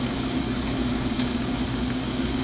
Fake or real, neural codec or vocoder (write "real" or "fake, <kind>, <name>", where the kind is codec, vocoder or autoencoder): fake, codec, DAC